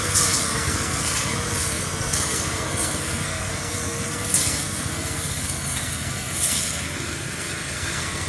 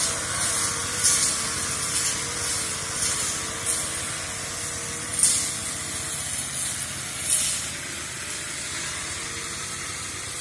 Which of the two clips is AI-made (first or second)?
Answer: first